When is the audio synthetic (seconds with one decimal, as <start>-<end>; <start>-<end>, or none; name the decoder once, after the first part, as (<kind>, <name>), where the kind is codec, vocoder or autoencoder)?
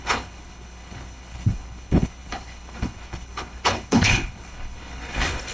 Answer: 0.0-5.5 (codec, HILCodec)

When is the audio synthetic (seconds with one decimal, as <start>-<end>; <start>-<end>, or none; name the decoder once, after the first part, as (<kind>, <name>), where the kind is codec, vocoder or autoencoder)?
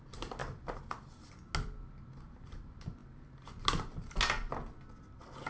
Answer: none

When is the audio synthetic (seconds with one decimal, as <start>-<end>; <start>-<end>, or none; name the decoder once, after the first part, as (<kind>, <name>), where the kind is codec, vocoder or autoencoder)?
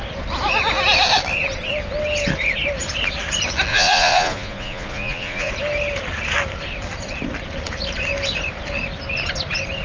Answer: 3.7-5.5 (vocoder, Vocos)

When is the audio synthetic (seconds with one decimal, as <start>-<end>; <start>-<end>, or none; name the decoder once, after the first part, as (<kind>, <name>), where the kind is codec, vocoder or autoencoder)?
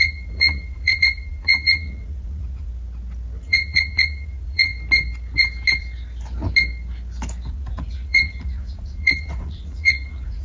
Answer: 0.0-2.7 (vocoder, Vocos); 3.4-4.7; 7.5-10.4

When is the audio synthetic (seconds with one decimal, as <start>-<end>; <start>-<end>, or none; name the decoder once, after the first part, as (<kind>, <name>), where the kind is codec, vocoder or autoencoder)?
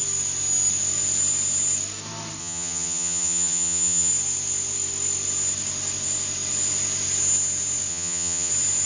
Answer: 2.4-4.1 (vocoder, HiFi-GAN); 7.9-8.5